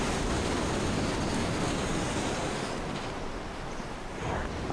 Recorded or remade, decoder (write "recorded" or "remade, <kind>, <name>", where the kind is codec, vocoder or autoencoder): recorded